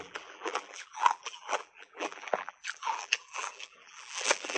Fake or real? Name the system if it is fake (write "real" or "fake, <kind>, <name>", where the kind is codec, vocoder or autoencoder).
fake, vocoder, BigVGAN v2